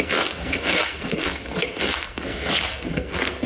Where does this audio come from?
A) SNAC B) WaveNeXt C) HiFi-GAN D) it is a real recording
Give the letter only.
A